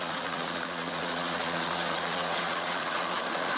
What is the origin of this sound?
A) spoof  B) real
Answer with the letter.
A